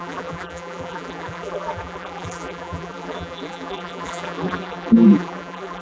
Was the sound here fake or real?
fake